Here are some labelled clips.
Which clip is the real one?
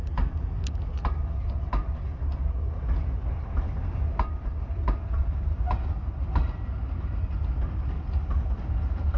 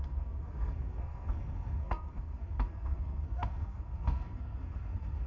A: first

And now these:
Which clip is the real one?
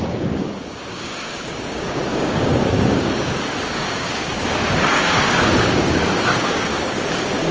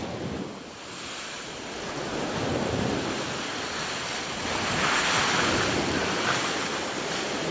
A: second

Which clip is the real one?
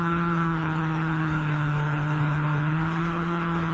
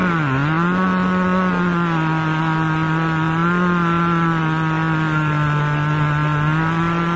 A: second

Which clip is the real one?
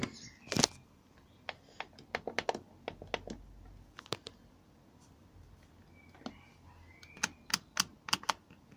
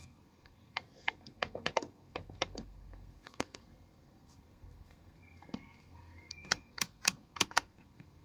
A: first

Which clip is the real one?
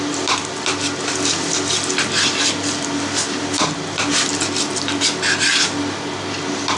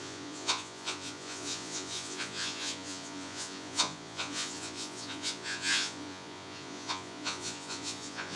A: first